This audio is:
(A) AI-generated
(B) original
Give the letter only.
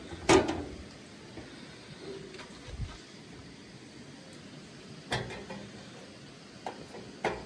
B